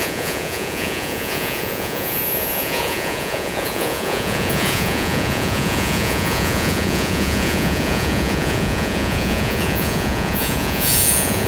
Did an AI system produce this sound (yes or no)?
yes